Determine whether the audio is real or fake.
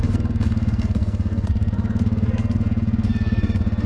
fake